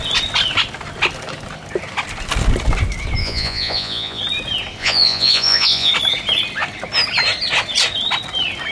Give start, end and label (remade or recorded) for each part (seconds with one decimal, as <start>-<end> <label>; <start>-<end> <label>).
0.0-3.2 recorded; 3.2-4.2 remade; 4.2-4.8 recorded; 4.8-5.9 remade; 5.9-8.7 recorded